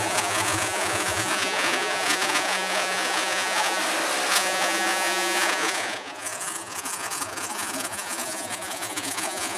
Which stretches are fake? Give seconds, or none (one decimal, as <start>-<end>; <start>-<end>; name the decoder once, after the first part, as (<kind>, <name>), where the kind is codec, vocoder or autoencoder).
0.0-3.8 (vocoder, Vocos); 4.3-9.6